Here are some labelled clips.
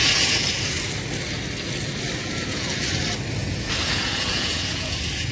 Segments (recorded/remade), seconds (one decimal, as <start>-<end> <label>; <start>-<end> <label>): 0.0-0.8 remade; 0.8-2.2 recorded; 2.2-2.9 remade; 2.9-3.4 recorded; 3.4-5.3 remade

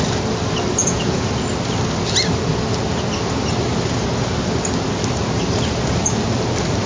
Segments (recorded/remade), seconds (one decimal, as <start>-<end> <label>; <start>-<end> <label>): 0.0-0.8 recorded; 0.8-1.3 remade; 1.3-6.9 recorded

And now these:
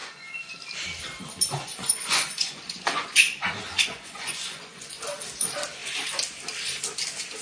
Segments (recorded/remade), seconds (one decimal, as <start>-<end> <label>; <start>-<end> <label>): 0.0-0.5 remade; 0.5-1.6 recorded; 1.6-5.0 remade; 5.0-7.4 recorded